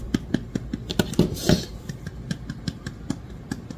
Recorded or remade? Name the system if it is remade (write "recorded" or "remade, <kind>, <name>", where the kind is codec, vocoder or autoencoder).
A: recorded